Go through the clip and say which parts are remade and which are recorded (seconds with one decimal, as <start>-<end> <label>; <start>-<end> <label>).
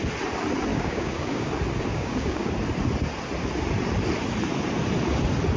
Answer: 0.0-0.7 recorded; 0.7-1.5 remade; 1.5-1.9 recorded; 1.9-2.5 remade; 2.5-5.6 recorded